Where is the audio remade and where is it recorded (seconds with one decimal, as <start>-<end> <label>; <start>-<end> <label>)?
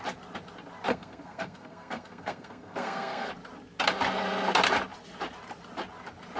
0.0-0.9 recorded; 0.9-3.3 remade; 3.3-6.4 recorded